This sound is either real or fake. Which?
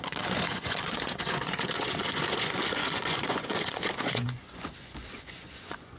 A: fake